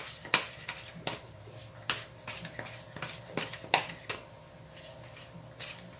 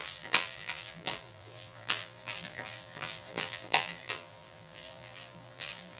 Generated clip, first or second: second